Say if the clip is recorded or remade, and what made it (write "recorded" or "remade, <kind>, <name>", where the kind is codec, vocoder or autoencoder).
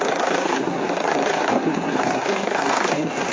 remade, codec, SNAC